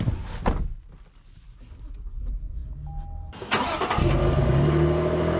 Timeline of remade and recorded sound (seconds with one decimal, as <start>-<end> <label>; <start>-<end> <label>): 0.0-4.2 recorded; 4.2-5.4 remade